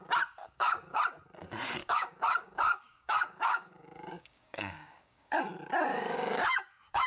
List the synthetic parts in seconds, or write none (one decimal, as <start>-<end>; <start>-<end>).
0.4-1.0; 1.8-5.4; 5.9-7.1